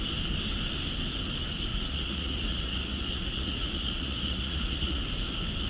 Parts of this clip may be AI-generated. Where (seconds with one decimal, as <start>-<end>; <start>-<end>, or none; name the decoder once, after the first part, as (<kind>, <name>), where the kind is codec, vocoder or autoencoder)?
1.7-5.0 (vocoder, Vocos)